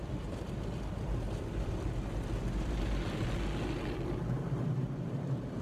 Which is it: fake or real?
real